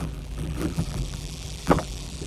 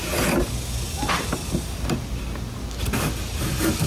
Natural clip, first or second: second